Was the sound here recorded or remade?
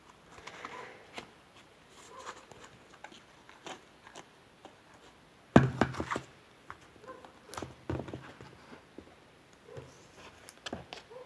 recorded